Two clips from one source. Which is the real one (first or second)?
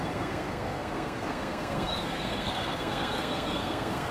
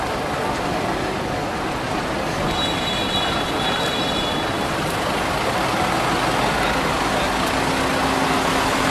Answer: second